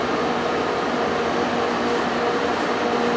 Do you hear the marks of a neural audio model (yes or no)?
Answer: no